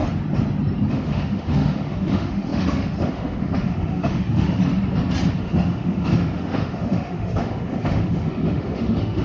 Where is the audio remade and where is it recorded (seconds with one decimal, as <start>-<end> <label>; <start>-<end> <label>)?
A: 0.0-0.9 recorded; 0.9-4.6 remade; 4.6-5.3 recorded; 5.3-9.2 remade